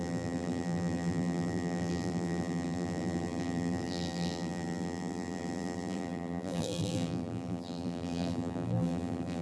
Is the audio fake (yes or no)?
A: yes